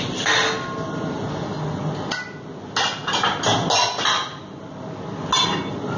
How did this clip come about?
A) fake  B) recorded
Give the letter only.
B